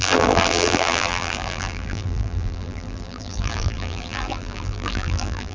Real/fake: fake